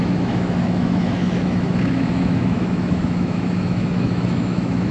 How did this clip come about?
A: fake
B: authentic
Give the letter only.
A